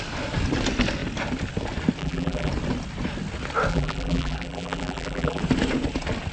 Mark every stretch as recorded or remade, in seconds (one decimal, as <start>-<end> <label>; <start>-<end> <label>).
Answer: 0.0-2.0 recorded; 2.0-2.5 remade; 2.5-3.7 recorded; 3.7-5.4 remade; 5.4-6.3 recorded